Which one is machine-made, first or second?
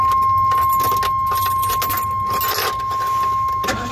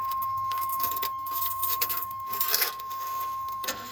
second